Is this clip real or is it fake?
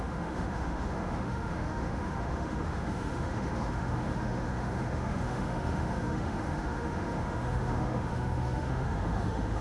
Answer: fake